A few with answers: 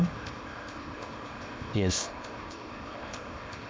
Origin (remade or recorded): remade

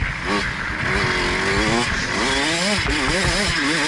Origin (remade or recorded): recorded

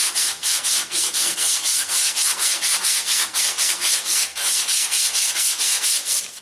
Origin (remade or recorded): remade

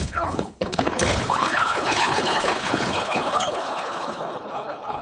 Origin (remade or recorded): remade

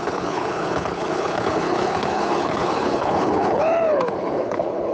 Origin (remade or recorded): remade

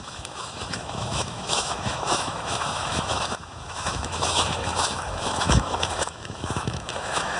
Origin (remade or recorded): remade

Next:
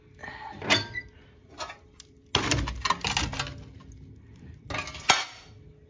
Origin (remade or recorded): recorded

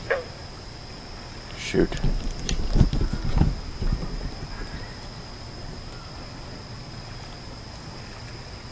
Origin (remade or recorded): recorded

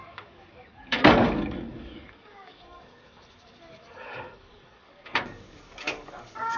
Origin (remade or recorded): remade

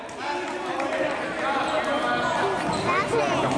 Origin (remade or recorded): recorded